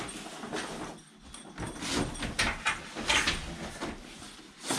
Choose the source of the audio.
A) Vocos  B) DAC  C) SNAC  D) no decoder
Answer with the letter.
D